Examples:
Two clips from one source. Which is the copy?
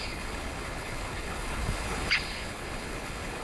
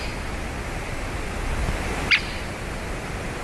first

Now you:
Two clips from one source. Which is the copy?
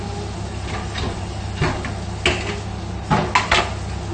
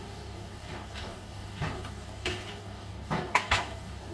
second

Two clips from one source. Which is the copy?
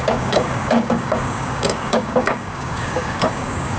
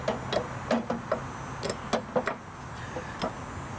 first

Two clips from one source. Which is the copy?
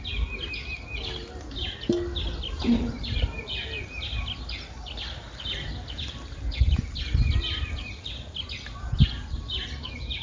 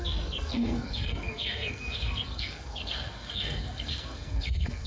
second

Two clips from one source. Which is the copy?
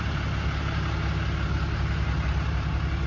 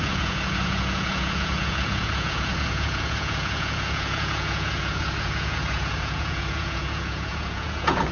second